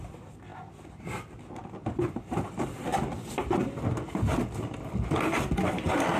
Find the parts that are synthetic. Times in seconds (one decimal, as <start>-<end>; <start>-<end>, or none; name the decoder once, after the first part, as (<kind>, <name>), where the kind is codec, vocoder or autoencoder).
0.0-0.5 (vocoder, BigVGAN v2); 1.5-2.9; 5.5-6.2